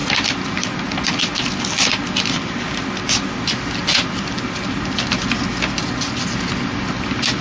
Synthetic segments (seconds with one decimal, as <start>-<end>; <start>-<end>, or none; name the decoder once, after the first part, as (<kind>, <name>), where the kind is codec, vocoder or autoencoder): none